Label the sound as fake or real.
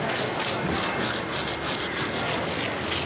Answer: real